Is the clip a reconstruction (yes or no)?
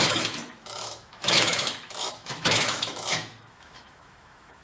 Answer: yes